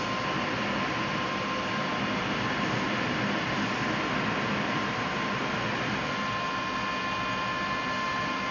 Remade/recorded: recorded